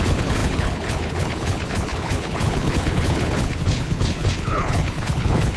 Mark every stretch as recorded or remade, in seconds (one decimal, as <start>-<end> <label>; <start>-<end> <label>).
0.0-5.6 remade